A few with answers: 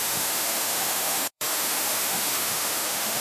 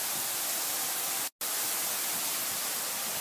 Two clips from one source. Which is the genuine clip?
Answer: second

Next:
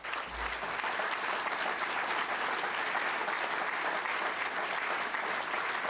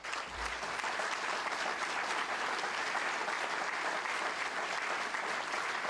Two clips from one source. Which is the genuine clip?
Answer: first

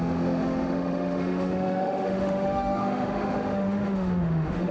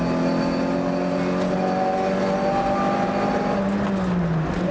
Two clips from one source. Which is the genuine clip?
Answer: second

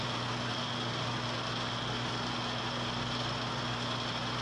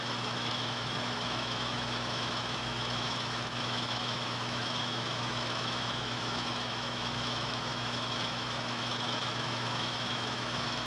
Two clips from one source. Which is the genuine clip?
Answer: first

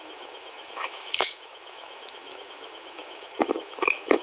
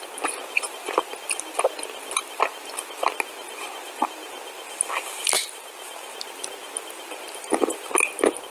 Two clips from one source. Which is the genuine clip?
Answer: second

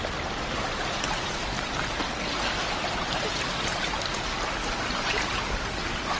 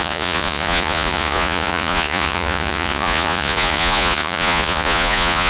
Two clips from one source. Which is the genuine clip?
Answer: first